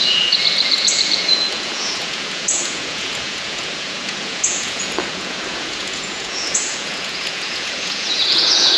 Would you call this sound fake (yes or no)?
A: yes